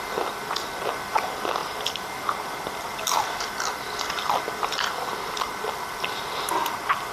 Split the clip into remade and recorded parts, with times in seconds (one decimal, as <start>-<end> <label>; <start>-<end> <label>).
0.0-7.1 recorded

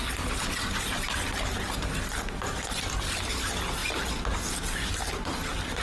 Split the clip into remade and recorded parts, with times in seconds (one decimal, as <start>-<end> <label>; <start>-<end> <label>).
0.0-5.8 recorded

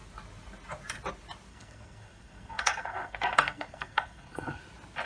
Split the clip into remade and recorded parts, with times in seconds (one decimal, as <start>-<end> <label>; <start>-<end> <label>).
0.0-1.5 recorded; 1.5-4.6 remade; 4.6-5.1 recorded